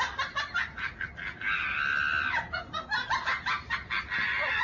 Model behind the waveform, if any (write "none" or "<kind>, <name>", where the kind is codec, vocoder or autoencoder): none